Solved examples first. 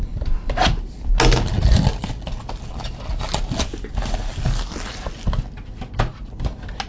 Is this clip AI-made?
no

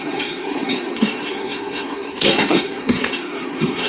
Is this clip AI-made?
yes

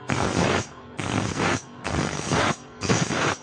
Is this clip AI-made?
yes